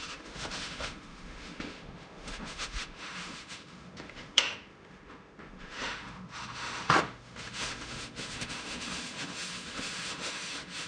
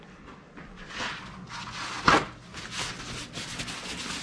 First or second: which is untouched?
second